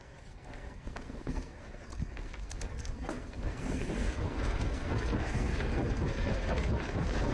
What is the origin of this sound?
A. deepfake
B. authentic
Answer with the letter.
A